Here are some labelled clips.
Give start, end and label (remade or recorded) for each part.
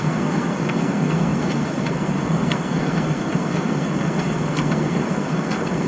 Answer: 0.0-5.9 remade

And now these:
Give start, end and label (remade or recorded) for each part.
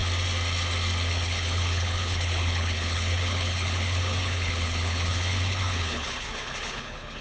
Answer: 0.0-1.1 recorded; 1.1-7.2 remade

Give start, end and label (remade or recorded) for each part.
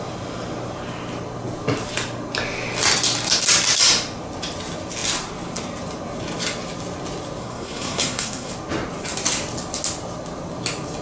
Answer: 0.0-7.4 recorded; 7.4-8.5 remade; 8.5-11.0 recorded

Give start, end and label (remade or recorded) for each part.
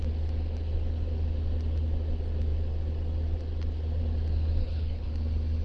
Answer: 0.0-4.6 recorded; 4.6-5.1 remade; 5.1-5.6 recorded